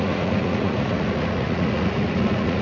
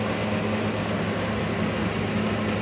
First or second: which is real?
second